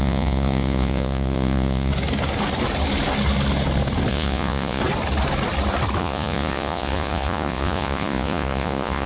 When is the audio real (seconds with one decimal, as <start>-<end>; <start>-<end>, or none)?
1.9-4.1; 4.8-6.0